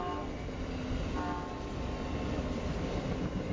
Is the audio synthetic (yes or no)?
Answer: no